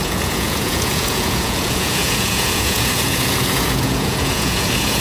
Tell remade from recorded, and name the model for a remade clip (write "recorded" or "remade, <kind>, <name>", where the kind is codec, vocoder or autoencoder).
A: remade, vocoder, Vocos